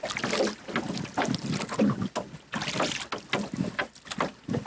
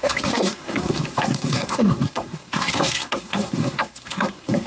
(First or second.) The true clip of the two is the first